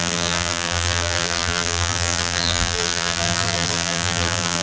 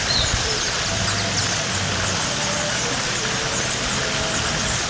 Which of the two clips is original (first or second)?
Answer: second